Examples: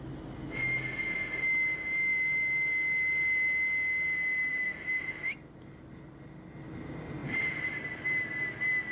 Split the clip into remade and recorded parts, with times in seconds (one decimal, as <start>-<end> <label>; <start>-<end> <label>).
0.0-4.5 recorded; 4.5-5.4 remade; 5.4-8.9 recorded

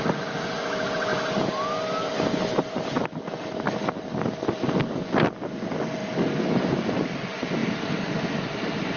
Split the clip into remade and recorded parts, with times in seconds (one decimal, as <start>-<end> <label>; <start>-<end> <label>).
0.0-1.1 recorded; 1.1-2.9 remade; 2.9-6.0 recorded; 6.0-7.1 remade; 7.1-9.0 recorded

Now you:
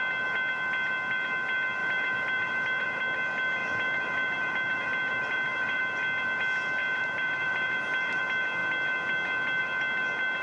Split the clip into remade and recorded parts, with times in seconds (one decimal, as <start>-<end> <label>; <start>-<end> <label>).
0.0-1.8 recorded; 1.8-3.0 remade; 3.0-3.6 recorded; 3.6-5.8 remade; 5.8-6.8 recorded; 6.8-8.2 remade; 8.2-10.4 recorded

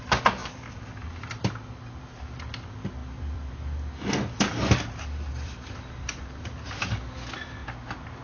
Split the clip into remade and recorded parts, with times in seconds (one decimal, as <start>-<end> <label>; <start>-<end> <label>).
0.0-0.4 recorded; 0.4-1.5 remade; 1.5-3.0 recorded; 3.0-3.5 remade; 3.5-5.3 recorded; 5.3-6.9 remade; 6.9-8.2 recorded